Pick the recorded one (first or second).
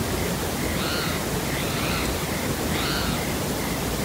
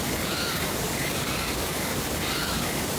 first